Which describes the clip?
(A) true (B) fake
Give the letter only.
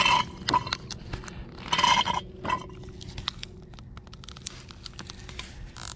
A